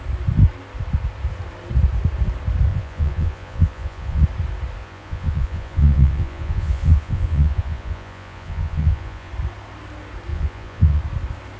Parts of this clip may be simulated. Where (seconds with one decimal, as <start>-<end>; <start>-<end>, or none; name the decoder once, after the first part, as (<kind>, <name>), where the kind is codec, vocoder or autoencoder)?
2.7-4.2 (vocoder, Vocos); 4.8-9.3; 10.3-11.0